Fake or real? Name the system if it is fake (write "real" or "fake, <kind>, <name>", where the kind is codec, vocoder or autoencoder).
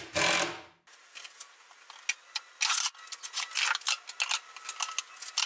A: real